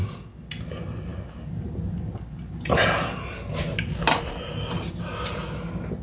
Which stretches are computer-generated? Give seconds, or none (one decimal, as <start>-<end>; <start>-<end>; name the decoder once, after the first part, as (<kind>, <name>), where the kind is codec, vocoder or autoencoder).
none